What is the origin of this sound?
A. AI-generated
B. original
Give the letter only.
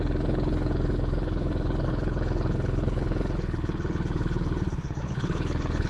A